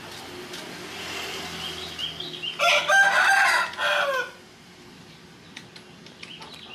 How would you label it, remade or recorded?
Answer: recorded